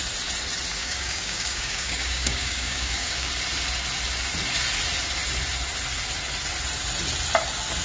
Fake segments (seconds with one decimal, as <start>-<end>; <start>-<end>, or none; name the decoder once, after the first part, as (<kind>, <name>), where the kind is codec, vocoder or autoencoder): 0.8-3.3 (codec, DAC)